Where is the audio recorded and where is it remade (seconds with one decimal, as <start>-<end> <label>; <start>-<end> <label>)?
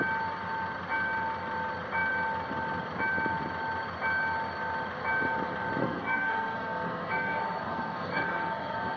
0.0-5.8 recorded; 5.8-9.0 remade